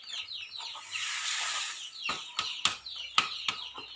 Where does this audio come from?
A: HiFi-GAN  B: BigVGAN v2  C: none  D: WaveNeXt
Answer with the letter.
C